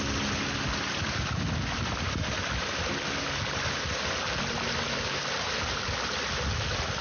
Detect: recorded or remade recorded